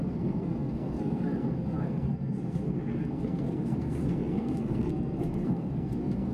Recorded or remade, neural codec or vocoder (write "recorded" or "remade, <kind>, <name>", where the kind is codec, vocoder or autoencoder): remade, codec, SNAC